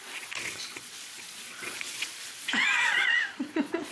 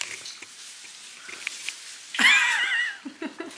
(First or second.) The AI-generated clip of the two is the first